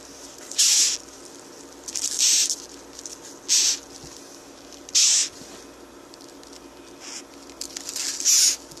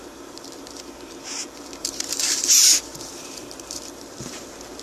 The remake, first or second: second